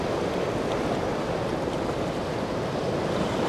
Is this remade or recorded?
recorded